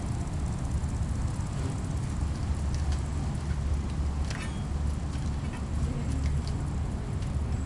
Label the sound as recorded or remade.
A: recorded